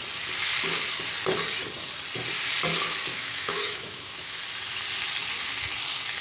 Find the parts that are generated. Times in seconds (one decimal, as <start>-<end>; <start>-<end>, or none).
3.1-4.4